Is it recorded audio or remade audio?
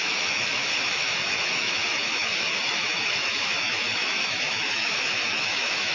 remade